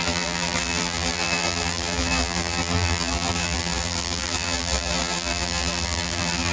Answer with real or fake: fake